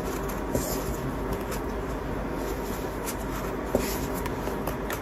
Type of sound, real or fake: real